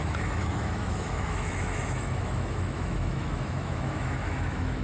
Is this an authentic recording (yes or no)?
no